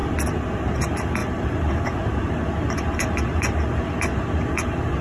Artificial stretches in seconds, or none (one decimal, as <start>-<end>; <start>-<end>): none